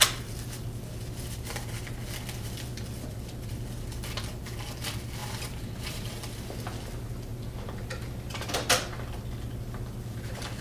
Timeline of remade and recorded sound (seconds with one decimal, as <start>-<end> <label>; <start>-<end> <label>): 0.0-5.2 recorded; 5.2-6.3 remade; 6.3-10.6 recorded